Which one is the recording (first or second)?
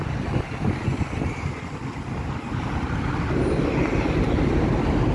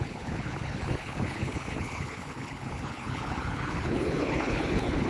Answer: first